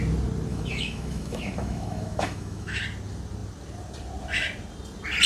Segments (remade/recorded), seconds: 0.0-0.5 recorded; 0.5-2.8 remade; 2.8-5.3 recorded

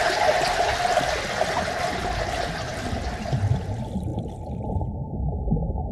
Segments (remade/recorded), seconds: 0.0-5.9 recorded

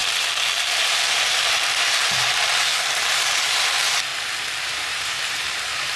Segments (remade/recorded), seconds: 0.0-0.6 recorded; 0.6-4.1 remade; 4.1-4.6 recorded; 4.6-6.0 remade

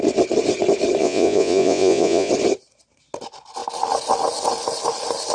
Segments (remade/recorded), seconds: 0.0-1.0 recorded; 1.0-2.3 remade; 2.3-5.3 recorded

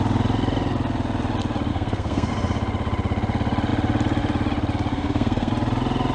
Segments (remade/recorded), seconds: 0.0-1.7 recorded; 1.7-2.3 remade; 2.3-4.9 recorded; 4.9-5.5 remade; 5.5-6.1 recorded